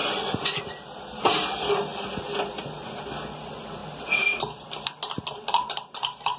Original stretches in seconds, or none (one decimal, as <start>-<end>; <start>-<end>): 0.6-1.9; 2.6-6.4